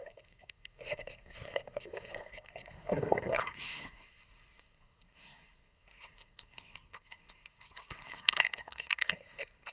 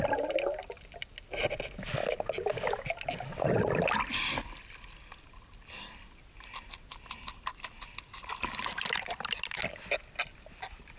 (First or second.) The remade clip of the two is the first